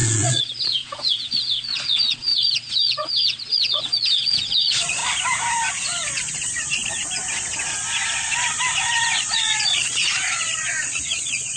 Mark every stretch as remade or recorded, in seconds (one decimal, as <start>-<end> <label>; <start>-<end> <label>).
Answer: 0.0-5.0 remade; 5.0-5.7 recorded; 5.7-6.8 remade; 6.8-9.3 recorded; 9.3-11.6 remade